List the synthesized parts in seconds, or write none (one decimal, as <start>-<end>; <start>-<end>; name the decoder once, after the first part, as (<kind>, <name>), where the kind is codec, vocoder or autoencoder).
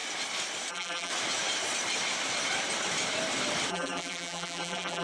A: 0.7-1.1 (vocoder, BigVGAN v2); 3.7-5.0